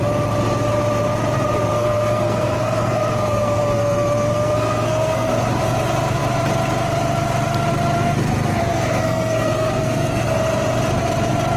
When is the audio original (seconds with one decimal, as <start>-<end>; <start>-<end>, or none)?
0.0-1.7; 5.3-8.6; 10.3-11.6